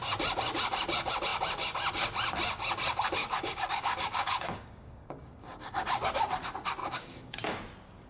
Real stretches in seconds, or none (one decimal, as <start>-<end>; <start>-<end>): 0.0-3.2; 5.8-6.8; 7.6-8.1